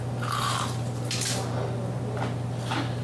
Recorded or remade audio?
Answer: recorded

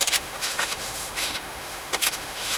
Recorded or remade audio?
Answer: remade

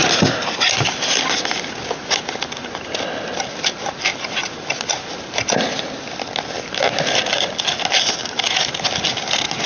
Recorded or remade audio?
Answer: recorded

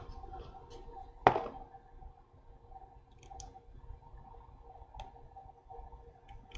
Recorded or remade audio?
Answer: recorded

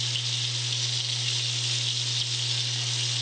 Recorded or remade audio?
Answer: recorded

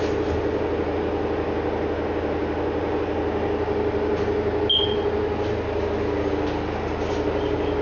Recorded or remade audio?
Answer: recorded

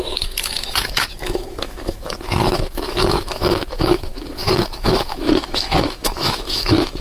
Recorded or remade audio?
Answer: remade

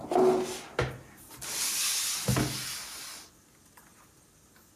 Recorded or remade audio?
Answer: recorded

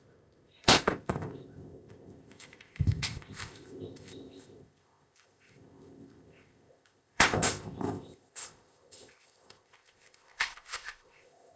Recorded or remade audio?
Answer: remade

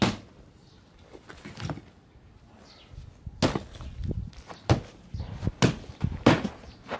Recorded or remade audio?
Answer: recorded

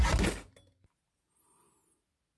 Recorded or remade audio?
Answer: recorded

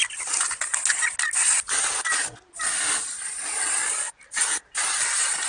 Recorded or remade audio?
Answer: recorded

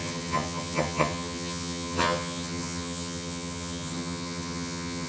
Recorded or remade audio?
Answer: remade